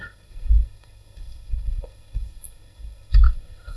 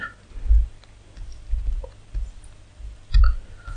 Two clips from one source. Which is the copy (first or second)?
first